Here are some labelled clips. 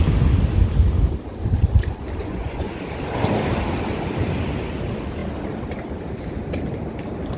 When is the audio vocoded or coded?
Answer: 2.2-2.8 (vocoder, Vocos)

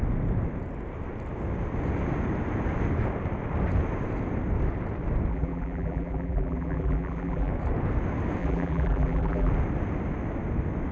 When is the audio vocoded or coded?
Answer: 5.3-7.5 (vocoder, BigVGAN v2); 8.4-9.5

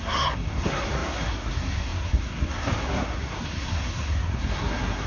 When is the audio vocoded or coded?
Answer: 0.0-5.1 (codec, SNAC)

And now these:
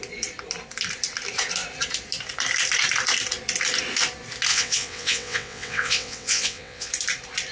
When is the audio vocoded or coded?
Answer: 4.5-6.9 (vocoder, WaveNeXt)

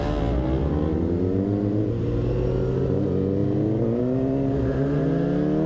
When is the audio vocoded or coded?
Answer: 3.4-4.0 (vocoder, BigVGAN v2)

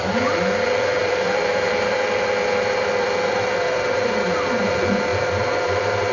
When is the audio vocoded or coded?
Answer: 1.0-4.6 (vocoder, BigVGAN v2); 5.1-6.1